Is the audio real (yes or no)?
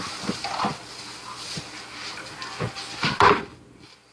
yes